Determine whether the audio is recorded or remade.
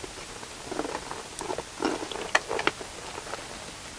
recorded